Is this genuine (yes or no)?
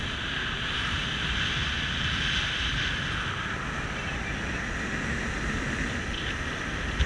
yes